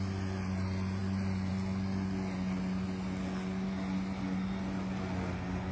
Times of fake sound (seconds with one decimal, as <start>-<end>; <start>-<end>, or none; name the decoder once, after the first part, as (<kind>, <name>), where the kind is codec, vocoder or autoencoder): none